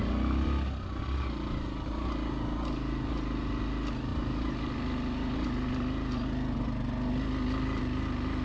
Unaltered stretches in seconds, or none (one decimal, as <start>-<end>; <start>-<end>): 0.0-8.4